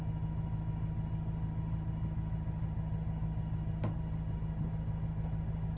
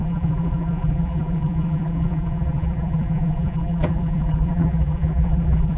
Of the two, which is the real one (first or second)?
first